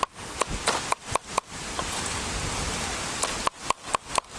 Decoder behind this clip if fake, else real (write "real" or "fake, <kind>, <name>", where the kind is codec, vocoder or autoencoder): real